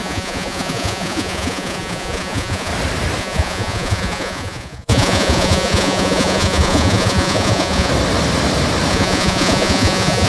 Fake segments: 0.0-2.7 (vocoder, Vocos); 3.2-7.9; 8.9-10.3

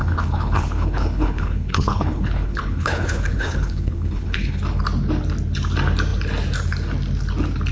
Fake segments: 0.0-4.6 (codec, HILCodec)

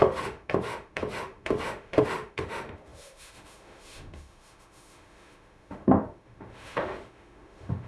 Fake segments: 0.0-7.9 (autoencoder, DAC-VAE)

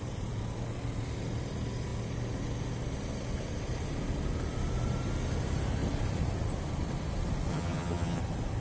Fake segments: 7.5-8.2 (vocoder, HiFi-GAN)